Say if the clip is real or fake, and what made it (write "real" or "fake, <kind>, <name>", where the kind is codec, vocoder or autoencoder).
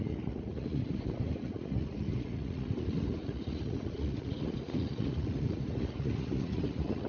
fake, vocoder, Vocos